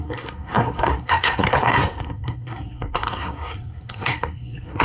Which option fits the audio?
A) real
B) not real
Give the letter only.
B